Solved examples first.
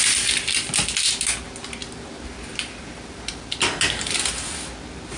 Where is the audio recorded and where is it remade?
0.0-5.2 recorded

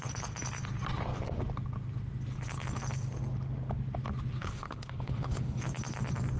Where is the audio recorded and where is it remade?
0.0-4.4 recorded; 4.4-5.6 remade; 5.6-6.4 recorded

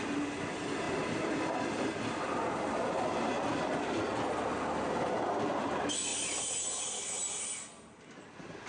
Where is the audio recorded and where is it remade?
0.0-8.7 recorded